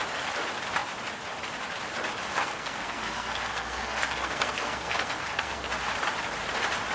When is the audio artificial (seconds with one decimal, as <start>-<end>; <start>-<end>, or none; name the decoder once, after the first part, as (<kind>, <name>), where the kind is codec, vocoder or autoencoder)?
2.3-5.7 (codec, SNAC)